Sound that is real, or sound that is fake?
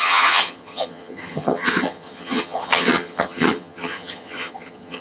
fake